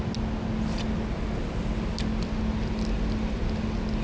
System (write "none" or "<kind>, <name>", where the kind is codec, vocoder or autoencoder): none